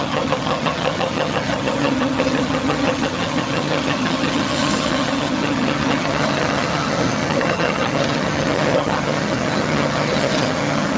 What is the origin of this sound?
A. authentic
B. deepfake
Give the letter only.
B